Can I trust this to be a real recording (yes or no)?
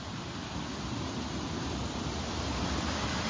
yes